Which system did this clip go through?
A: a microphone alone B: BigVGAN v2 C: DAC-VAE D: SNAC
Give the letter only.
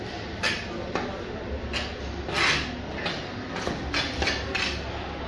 A